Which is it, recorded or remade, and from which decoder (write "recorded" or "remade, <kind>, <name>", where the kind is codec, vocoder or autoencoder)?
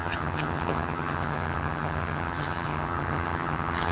remade, vocoder, HiFi-GAN